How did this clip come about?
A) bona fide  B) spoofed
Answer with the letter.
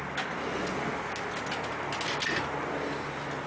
A